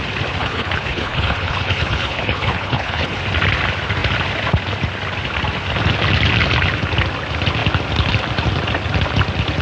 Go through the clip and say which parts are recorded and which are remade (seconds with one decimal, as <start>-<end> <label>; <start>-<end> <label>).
0.0-0.4 recorded; 0.4-3.2 remade; 3.2-9.6 recorded